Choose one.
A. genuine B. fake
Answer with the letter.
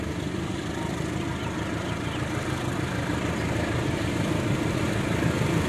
A